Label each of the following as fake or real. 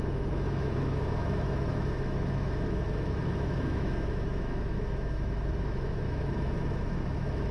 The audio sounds fake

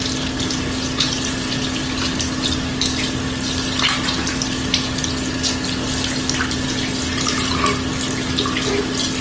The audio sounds real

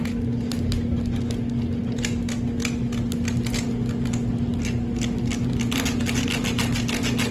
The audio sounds real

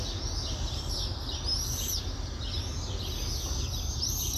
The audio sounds real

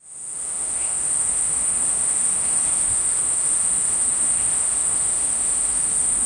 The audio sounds fake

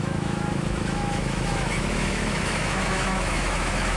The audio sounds fake